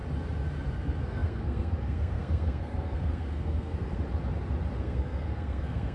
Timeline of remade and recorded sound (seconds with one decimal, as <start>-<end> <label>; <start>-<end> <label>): 0.0-0.7 recorded; 0.7-4.0 remade; 4.0-4.8 recorded; 4.8-5.9 remade